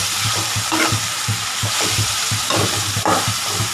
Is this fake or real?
real